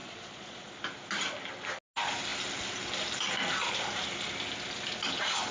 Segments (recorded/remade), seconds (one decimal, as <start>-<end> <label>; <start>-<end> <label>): 0.0-0.7 remade; 0.7-5.5 recorded